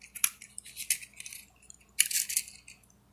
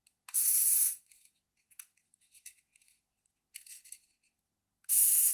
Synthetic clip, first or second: second